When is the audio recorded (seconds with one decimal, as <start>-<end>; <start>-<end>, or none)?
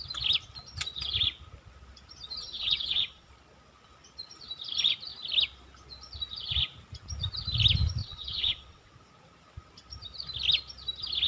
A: 0.0-2.4; 3.3-8.0; 8.9-11.3